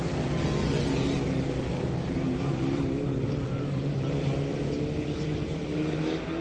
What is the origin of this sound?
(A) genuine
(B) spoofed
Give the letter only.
A